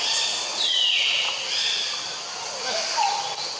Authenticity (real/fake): real